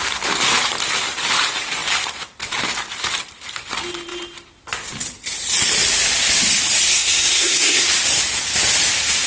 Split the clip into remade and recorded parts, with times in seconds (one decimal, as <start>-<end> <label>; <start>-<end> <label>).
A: 0.0-6.9 recorded; 6.9-7.9 remade; 7.9-9.3 recorded